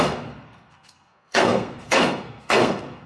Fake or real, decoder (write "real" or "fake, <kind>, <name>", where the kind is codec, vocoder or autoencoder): fake, codec, SNAC